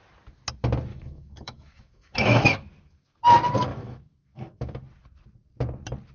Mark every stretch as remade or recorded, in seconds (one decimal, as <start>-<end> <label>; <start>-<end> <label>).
0.0-0.9 recorded; 0.9-3.2 remade; 3.2-3.7 recorded; 3.7-4.8 remade; 4.8-6.1 recorded

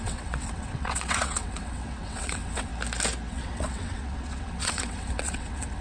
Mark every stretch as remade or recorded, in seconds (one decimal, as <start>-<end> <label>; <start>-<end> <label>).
0.0-2.7 remade; 2.7-3.3 recorded; 3.3-5.8 remade